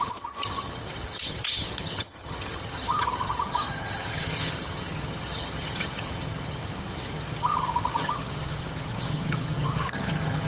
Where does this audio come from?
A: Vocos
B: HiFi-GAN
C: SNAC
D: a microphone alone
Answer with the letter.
B